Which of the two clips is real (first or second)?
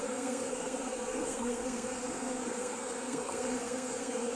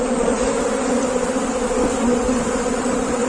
second